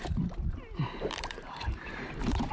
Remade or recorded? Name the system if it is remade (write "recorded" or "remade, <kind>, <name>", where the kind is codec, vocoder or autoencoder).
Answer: remade, vocoder, BigVGAN v2